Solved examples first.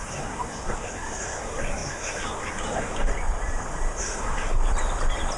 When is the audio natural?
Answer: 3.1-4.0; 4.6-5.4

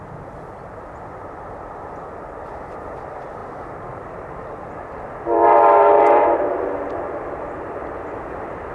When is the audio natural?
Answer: none

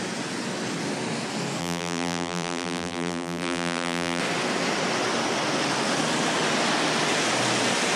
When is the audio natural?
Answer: 0.0-1.6; 4.2-8.0

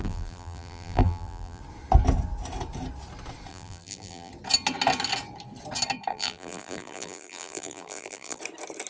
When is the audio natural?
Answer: 1.6-3.5; 4.3-6.1; 8.4-8.9

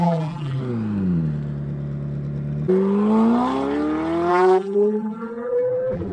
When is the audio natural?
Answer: 0.6-4.3

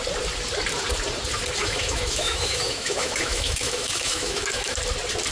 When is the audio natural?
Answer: 0.0-1.6; 4.8-5.3